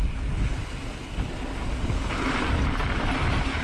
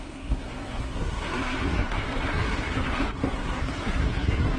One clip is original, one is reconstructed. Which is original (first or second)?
first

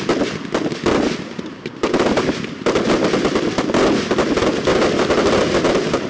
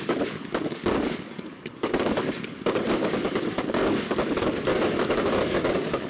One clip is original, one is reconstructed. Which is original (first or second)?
first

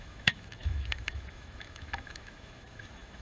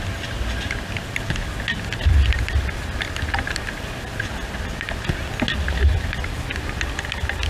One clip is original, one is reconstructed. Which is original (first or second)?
second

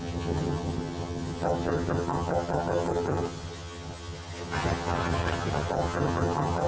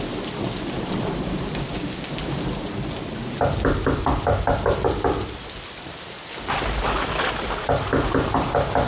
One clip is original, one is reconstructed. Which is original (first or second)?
second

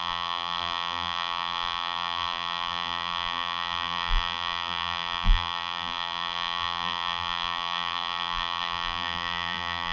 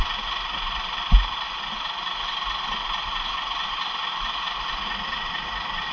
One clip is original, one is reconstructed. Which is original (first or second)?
second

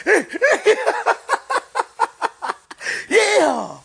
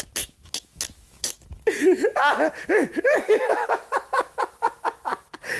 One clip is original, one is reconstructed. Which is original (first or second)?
first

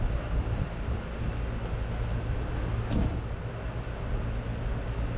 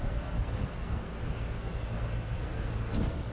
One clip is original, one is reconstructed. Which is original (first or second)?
first